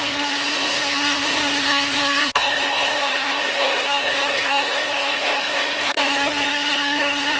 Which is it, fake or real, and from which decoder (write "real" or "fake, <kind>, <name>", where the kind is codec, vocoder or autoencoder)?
fake, codec, SNAC